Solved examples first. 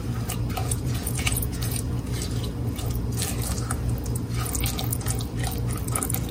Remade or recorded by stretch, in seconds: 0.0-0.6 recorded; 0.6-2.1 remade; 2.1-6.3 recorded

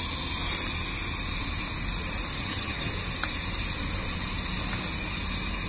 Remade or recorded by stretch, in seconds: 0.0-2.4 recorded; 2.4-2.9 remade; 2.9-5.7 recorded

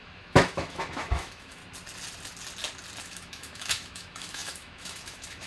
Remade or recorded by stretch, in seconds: 0.0-1.6 remade; 1.6-3.0 recorded; 3.0-5.5 remade

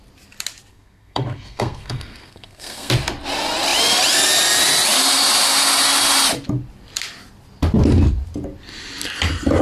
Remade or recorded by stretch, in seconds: 0.0-0.7 recorded; 0.7-2.9 remade; 2.9-9.6 recorded

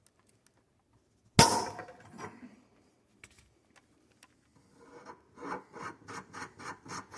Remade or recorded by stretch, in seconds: 0.0-7.2 recorded

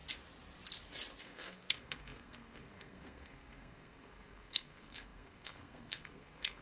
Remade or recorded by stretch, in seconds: 0.0-1.2 recorded; 1.2-6.6 remade